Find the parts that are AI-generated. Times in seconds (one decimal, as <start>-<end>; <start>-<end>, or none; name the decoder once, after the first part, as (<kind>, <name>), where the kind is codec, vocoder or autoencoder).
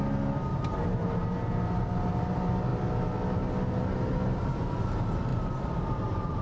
0.5-2.0 (vocoder, BigVGAN v2); 5.3-6.4